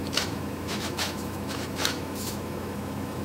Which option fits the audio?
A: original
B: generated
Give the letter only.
B